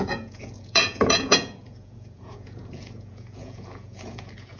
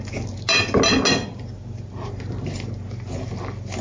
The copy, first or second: first